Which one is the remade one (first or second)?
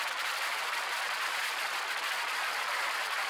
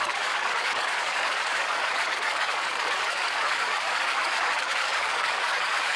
second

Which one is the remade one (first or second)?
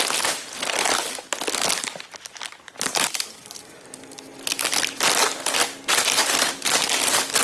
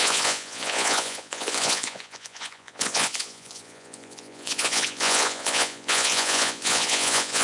second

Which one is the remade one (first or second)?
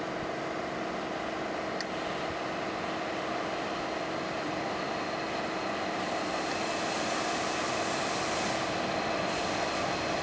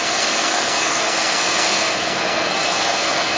second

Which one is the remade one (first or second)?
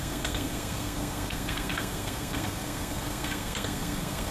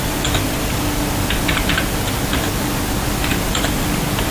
first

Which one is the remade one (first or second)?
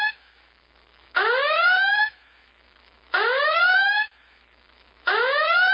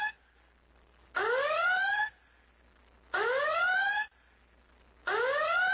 first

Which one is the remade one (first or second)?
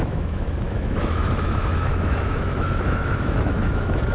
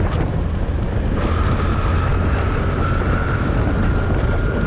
first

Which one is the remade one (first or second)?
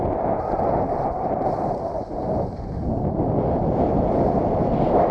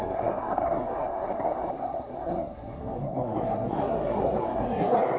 second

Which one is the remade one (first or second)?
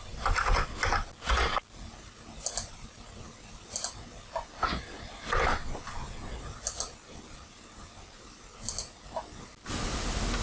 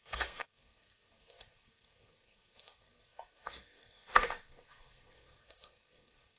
second